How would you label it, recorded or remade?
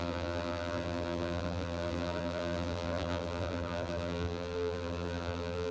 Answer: remade